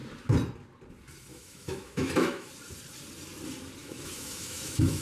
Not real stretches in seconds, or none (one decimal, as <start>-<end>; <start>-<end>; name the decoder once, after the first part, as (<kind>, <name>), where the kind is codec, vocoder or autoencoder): 1.3-2.5 (autoencoder, DAC-VAE); 3.8-5.0